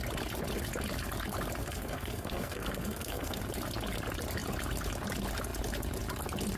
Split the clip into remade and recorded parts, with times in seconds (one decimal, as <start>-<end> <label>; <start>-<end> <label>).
0.0-1.6 recorded; 1.6-3.4 remade; 3.4-6.6 recorded